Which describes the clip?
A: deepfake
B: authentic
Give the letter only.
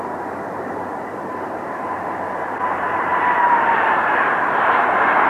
A